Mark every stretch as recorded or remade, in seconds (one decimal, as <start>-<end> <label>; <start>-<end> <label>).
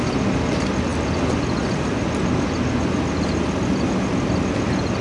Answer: 0.0-5.0 recorded